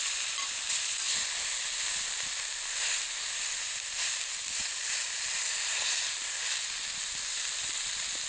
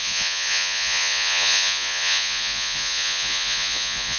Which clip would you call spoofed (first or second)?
second